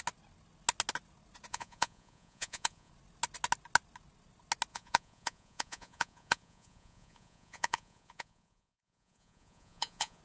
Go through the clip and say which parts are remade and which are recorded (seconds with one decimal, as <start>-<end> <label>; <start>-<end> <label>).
0.0-1.5 recorded; 1.5-2.9 remade; 2.9-4.7 recorded; 4.7-10.2 remade